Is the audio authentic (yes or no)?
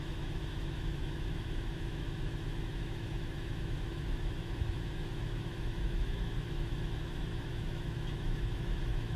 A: no